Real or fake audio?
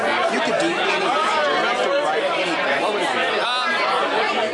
real